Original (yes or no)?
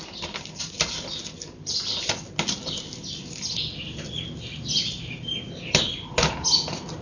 yes